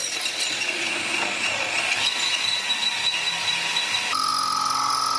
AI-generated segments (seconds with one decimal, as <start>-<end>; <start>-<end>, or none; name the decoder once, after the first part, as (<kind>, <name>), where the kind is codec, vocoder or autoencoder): none